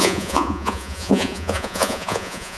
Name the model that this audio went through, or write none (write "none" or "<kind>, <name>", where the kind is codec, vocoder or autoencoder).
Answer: vocoder, Vocos